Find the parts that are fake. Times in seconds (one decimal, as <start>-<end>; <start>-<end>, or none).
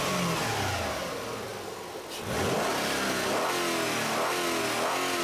none